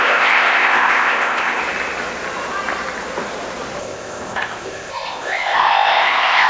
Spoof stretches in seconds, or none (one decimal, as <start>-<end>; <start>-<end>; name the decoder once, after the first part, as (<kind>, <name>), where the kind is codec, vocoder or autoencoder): 0.0-1.6 (codec, ZipCodec); 3.8-6.5